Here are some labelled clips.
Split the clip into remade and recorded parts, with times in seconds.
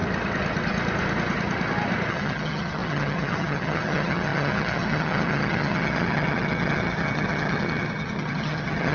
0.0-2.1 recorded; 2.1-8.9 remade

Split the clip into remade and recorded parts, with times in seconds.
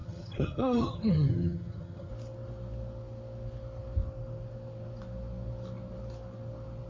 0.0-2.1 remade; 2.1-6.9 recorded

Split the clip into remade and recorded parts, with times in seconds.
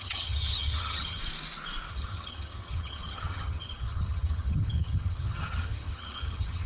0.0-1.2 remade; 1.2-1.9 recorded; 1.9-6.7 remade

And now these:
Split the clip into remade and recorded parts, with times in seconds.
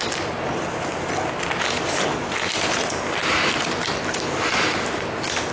0.0-5.5 recorded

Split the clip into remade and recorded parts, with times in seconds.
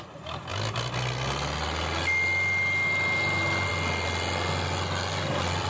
0.0-5.7 recorded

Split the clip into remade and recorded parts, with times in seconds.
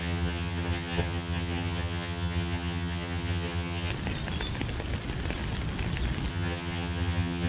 0.0-3.9 remade; 3.9-6.3 recorded; 6.3-7.5 remade